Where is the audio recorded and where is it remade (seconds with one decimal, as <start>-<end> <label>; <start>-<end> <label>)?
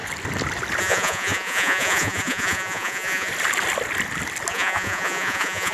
0.0-0.8 recorded; 0.8-3.3 remade; 3.3-4.5 recorded; 4.5-5.7 remade